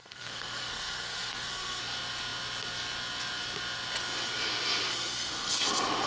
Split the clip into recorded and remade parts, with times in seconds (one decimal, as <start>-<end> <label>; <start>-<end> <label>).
0.0-1.8 remade; 1.8-4.9 recorded; 4.9-5.6 remade; 5.6-6.1 recorded